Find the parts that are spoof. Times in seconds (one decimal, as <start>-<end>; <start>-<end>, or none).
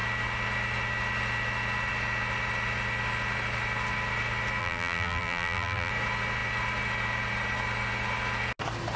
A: 4.6-5.9